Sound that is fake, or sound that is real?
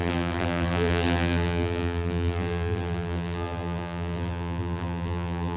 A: fake